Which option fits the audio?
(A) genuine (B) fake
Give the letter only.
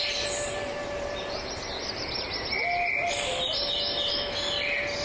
A